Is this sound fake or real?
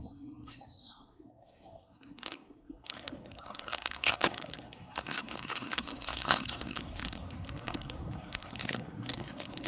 fake